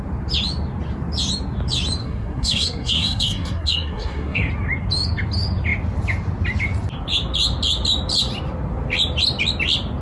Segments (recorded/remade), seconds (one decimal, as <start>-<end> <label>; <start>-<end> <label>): 0.0-2.0 recorded; 2.0-4.5 remade; 4.5-10.0 recorded